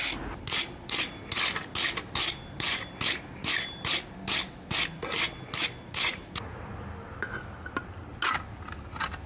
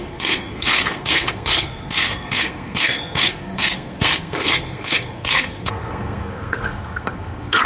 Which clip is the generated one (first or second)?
second